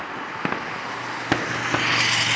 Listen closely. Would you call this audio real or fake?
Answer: real